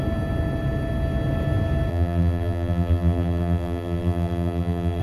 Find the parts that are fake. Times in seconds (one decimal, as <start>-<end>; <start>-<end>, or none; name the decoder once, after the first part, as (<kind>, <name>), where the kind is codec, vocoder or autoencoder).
1.9-5.0 (vocoder, BigVGAN v2)